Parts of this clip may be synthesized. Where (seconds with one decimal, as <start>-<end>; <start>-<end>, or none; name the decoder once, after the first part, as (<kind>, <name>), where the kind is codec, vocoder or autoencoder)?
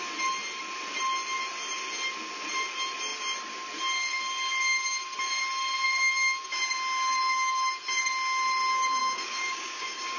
9.0-10.2 (codec, DAC)